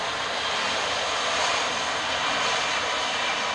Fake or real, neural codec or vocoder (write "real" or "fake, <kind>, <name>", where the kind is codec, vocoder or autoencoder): real